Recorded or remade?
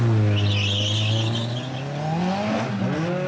recorded